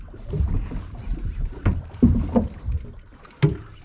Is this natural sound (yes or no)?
yes